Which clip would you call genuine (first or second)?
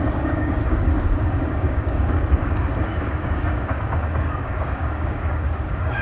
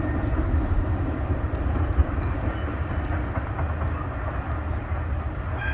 second